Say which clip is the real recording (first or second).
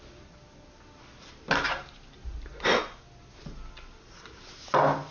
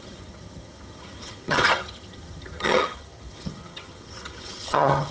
first